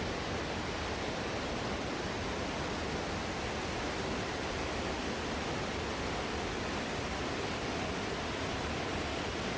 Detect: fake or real real